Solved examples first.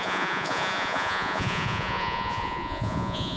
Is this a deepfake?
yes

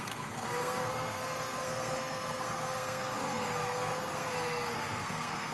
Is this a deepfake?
yes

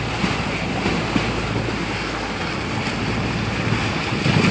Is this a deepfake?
no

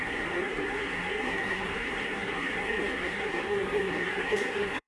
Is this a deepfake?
yes